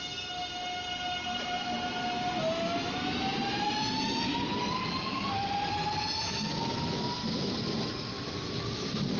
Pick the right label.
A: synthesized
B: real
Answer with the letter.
B